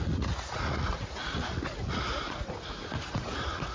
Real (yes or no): no